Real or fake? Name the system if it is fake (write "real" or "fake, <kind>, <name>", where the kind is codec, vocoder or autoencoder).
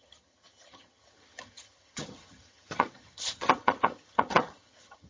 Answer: fake, vocoder, HiFi-GAN